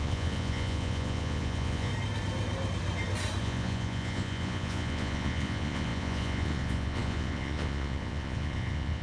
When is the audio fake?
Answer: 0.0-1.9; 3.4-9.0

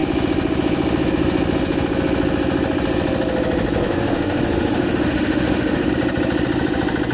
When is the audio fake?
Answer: 3.8-5.9